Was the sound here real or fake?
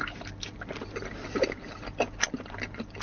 real